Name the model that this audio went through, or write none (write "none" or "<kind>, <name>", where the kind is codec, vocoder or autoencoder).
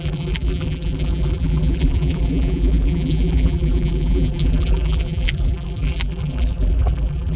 vocoder, BigVGAN v2